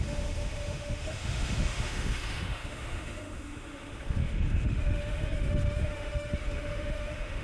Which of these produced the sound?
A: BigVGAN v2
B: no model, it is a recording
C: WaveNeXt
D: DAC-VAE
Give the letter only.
D